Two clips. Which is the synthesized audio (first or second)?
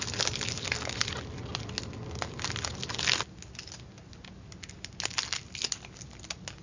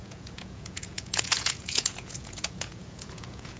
second